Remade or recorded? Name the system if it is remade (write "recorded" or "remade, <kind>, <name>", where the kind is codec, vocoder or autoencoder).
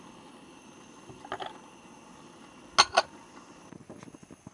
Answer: recorded